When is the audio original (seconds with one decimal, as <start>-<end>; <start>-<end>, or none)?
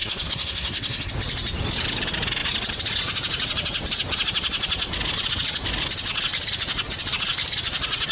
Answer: 1.1-8.1